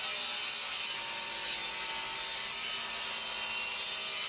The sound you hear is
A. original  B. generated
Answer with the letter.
A